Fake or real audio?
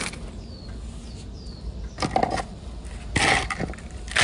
real